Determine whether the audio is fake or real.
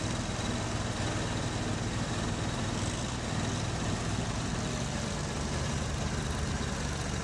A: real